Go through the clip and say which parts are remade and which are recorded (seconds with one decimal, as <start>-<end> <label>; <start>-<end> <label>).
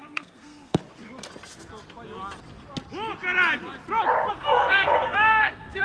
0.0-0.8 remade; 0.8-4.3 recorded; 4.3-5.8 remade